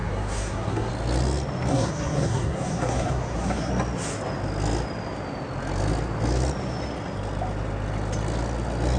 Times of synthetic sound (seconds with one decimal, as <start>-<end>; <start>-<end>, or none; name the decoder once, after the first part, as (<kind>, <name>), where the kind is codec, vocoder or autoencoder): 0.0-0.9 (codec, SNAC); 1.7-3.7